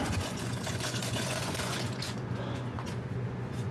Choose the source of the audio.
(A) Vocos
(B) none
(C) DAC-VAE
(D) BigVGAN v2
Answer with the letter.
A